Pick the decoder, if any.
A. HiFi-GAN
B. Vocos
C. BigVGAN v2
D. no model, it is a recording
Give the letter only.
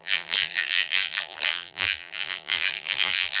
C